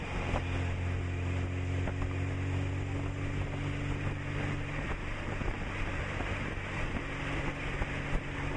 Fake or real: real